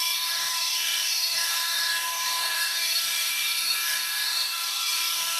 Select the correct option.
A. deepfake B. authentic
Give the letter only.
A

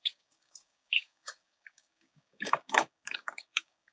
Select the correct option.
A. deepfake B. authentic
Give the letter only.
A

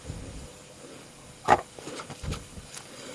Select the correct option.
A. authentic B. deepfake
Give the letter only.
B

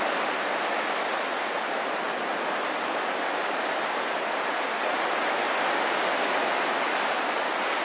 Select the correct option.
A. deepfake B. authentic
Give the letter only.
B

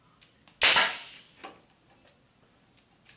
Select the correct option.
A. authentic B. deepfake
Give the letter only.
A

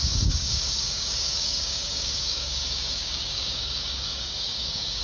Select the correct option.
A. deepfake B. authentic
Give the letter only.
A